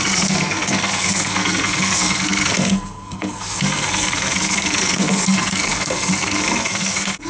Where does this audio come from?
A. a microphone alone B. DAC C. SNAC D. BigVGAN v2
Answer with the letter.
C